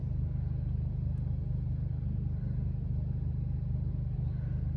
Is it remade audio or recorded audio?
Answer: recorded